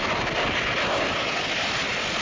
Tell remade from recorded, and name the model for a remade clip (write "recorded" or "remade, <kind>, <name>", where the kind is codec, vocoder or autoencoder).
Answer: recorded